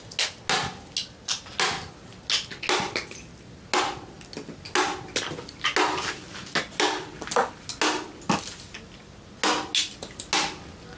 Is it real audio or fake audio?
real